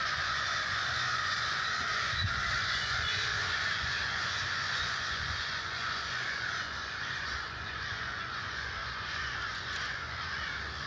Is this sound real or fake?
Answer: fake